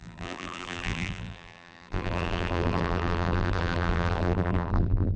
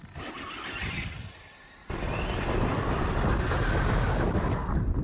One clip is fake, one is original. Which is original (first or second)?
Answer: second